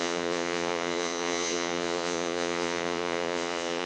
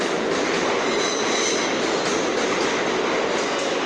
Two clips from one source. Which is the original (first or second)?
second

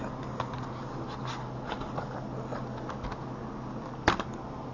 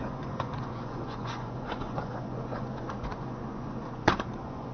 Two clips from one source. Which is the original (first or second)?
first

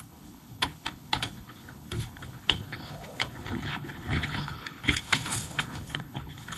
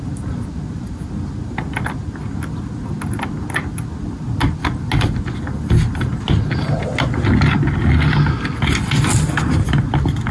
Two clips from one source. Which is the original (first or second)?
second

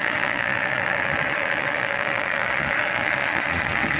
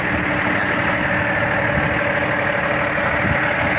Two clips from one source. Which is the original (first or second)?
second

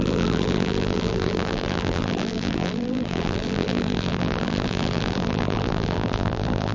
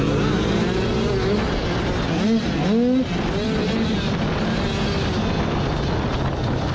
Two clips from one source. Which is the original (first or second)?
second